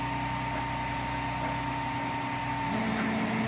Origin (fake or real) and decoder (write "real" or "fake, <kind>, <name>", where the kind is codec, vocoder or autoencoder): real